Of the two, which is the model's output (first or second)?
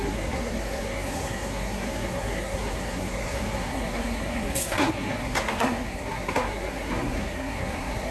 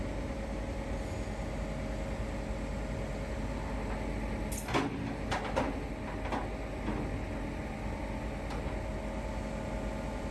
first